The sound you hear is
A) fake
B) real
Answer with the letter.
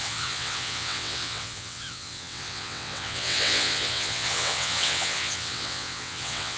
A